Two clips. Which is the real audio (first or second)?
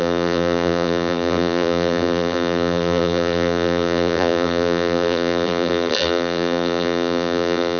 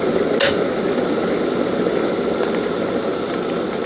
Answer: second